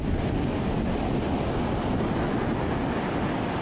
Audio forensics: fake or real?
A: real